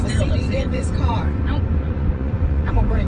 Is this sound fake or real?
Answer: fake